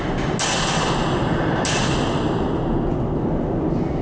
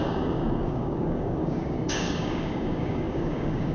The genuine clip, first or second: first